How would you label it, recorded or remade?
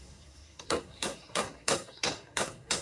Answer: remade